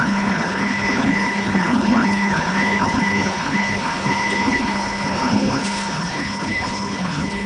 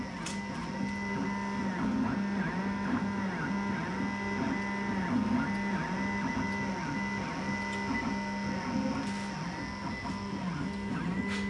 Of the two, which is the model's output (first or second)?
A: first